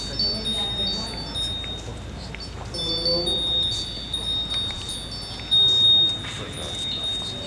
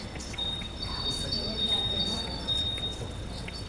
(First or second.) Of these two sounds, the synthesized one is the second